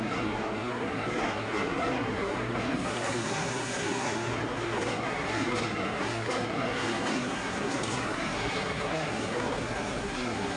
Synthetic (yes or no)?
yes